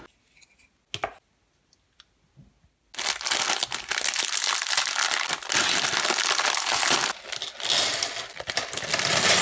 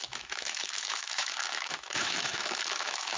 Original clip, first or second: first